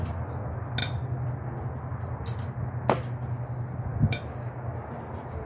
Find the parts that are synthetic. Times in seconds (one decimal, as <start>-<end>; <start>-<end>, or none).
none